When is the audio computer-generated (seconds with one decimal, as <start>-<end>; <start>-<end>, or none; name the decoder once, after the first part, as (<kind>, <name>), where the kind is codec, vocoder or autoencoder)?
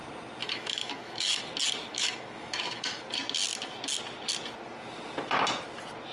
0.4-1.4 (autoencoder, DAC-VAE); 1.9-3.0